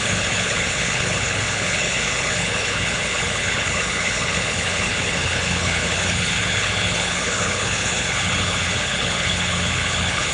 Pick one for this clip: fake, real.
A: fake